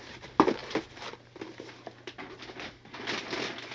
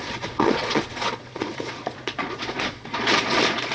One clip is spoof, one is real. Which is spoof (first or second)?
second